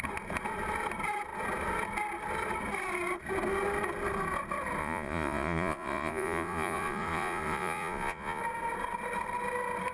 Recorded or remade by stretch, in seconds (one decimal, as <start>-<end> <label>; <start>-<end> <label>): 0.0-4.8 recorded; 4.8-8.4 remade; 8.4-9.9 recorded